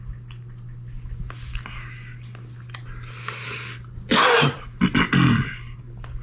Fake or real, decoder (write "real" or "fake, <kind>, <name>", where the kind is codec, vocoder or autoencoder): real